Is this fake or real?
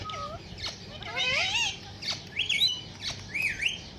real